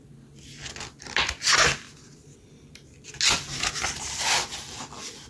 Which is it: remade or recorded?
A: recorded